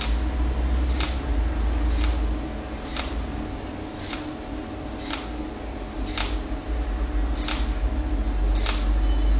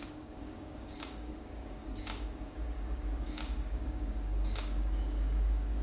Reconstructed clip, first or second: second